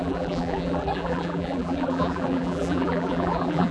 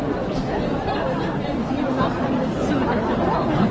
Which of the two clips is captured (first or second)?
second